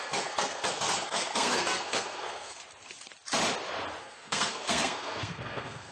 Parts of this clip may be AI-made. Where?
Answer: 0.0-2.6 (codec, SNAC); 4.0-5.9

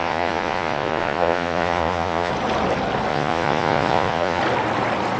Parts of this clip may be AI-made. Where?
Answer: 0.0-2.3 (vocoder, Vocos); 3.1-4.4

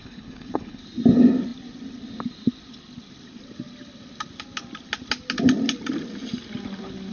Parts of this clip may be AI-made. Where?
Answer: 0.0-0.8 (codec, HILCodec)

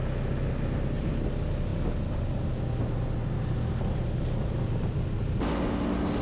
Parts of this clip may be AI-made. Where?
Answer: none

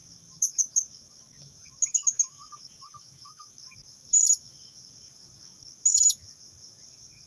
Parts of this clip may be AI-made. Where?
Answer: 0.0-7.3 (codec, DAC)